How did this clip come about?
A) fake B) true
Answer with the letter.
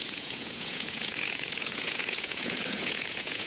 A